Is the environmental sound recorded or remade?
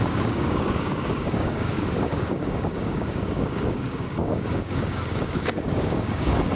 remade